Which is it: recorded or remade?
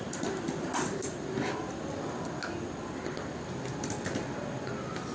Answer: recorded